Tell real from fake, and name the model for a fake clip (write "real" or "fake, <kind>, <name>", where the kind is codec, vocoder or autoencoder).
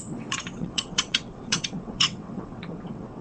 fake, vocoder, WaveNeXt